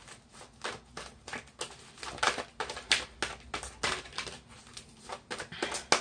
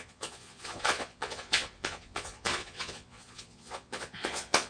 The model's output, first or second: second